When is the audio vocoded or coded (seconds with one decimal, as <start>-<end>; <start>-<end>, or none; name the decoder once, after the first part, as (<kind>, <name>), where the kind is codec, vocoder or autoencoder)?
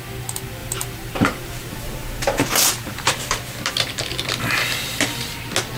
0.6-3.4 (vocoder, BigVGAN v2)